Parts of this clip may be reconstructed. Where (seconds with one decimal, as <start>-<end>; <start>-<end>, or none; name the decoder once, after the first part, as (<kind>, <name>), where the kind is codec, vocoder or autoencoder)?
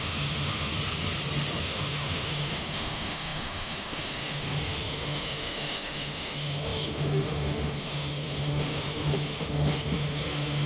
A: 0.0-0.7 (autoencoder, DAC-VAE); 1.6-10.7